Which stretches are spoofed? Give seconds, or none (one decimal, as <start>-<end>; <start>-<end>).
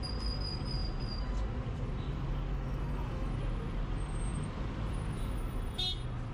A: 2.5-3.4